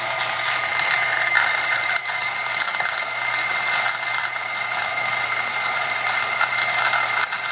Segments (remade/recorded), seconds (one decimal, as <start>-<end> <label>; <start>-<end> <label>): 0.0-0.7 recorded; 0.7-2.7 remade; 2.7-4.8 recorded; 4.8-6.5 remade; 6.5-7.5 recorded